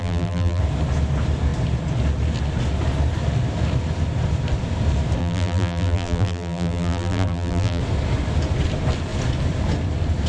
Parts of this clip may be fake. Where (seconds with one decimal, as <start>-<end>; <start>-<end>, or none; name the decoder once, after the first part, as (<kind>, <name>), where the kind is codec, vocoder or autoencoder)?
0.0-0.6 (vocoder, BigVGAN v2); 5.2-7.8

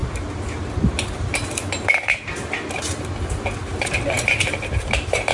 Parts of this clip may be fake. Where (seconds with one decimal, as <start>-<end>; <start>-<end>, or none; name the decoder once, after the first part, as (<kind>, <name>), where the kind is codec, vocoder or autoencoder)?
3.7-5.3 (vocoder, BigVGAN v2)